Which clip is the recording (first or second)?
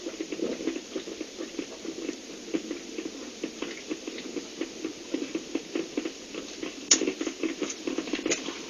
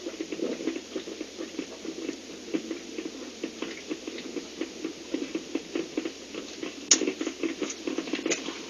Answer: second